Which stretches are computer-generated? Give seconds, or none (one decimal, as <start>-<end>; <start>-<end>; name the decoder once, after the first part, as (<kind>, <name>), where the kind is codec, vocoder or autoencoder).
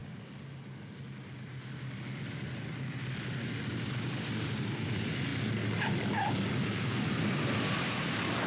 3.6-5.3 (vocoder, BigVGAN v2); 7.1-8.5